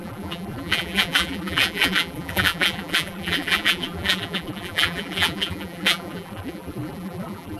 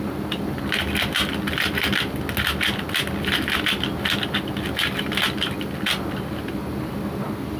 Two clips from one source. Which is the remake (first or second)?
first